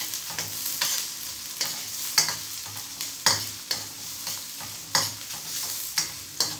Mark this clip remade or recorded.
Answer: recorded